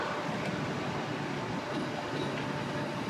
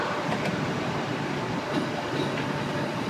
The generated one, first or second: second